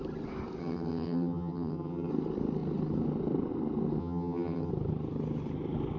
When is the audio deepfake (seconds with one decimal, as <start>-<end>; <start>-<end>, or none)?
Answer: 0.6-2.1; 4.0-4.7